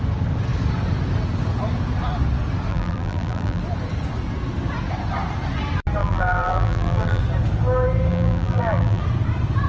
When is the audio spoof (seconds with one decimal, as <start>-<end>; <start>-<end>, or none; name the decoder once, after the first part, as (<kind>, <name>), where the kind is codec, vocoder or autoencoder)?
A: 2.7-3.6 (vocoder, BigVGAN v2); 6.0-7.2; 8.1-9.0